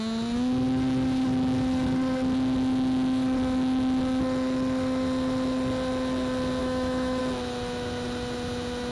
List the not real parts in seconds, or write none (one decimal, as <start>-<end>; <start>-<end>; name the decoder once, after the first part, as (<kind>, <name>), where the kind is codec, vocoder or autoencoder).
6.6-7.2 (autoencoder, DAC-VAE)